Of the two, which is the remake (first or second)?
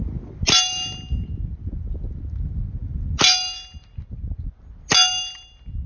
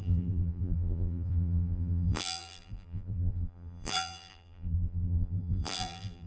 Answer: second